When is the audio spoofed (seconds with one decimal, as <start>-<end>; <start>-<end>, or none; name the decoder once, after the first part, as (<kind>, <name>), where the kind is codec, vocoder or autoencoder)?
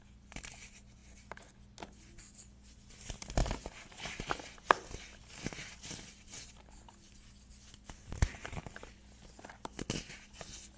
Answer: none